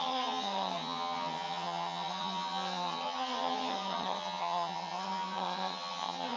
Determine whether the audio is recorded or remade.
remade